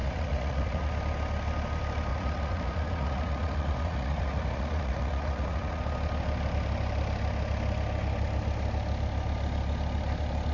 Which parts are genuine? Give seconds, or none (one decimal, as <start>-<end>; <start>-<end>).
0.9-2.1; 5.8-10.5